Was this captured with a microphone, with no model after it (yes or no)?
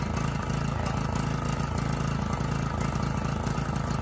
yes